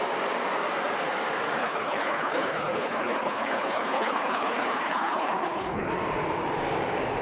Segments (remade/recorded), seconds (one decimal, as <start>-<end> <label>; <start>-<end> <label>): 0.0-1.6 recorded; 1.6-5.9 remade; 5.9-7.2 recorded